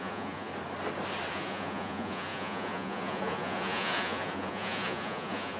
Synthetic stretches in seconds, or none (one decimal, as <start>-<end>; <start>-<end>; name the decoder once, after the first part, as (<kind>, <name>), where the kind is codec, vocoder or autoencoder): 0.0-0.5 (vocoder, Vocos); 1.3-5.6